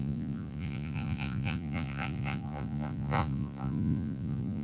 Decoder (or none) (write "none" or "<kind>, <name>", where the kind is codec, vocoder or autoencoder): vocoder, Vocos